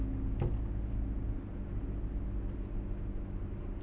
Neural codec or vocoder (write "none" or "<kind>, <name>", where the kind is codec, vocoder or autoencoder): none